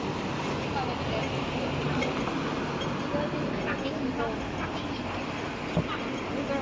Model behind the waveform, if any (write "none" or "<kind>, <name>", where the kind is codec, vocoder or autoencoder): none